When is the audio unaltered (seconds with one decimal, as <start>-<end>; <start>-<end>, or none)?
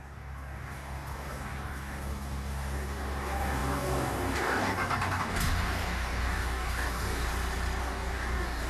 7.3-7.8